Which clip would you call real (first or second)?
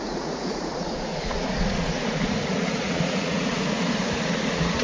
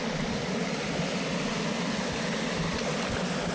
second